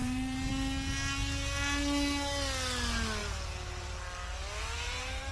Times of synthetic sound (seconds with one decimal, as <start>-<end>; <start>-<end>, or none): 0.0-0.5; 3.2-3.9; 4.8-5.3